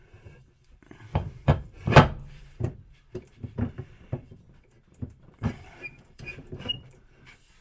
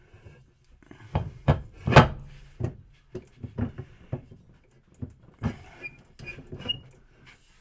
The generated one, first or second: first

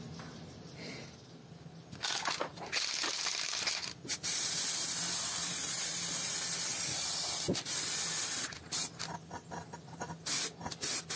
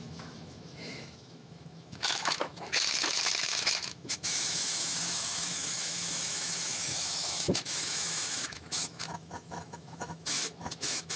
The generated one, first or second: second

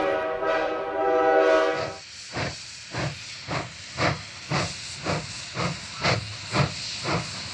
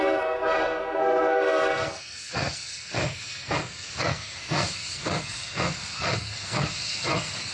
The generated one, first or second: second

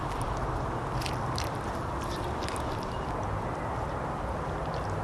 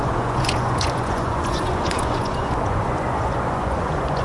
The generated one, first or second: second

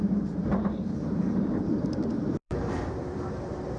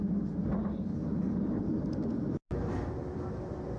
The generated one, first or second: first